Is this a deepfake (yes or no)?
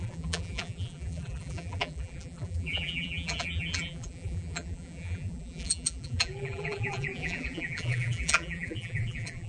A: yes